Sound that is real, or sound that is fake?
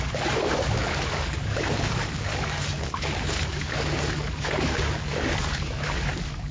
fake